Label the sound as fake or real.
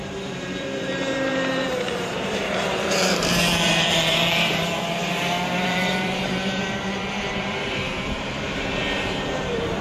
fake